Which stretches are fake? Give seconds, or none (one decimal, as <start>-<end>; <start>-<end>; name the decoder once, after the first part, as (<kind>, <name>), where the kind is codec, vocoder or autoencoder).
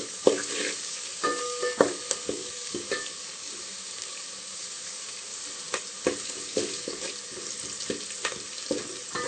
0.0-5.3 (codec, DAC); 6.2-7.1